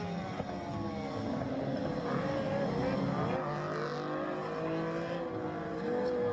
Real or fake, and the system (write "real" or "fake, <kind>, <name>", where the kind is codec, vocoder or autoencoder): real